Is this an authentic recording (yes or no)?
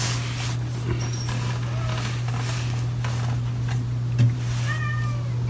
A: yes